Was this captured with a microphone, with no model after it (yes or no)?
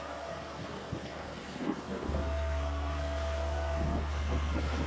no